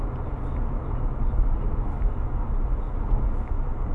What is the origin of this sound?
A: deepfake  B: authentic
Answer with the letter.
B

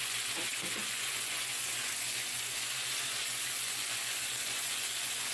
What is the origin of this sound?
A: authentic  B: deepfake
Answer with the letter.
B